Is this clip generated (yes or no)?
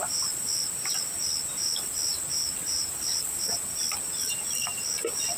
yes